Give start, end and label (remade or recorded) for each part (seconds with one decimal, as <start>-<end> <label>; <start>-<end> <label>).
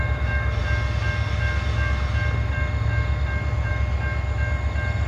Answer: 0.0-5.1 recorded